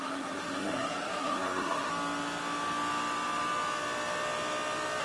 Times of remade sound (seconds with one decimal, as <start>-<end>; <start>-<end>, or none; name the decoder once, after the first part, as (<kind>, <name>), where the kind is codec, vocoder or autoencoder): 0.0-1.9 (codec, SNAC)